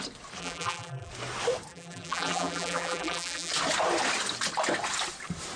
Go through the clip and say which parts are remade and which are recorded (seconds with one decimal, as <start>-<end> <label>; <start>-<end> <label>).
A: 0.0-0.4 recorded; 0.4-1.1 remade; 1.1-1.7 recorded; 1.7-3.5 remade; 3.5-5.6 recorded